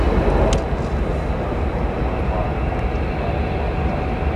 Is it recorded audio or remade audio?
recorded